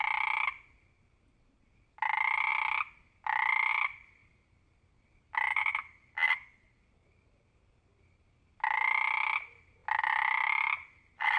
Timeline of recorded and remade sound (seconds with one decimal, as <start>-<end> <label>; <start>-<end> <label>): 0.0-11.4 recorded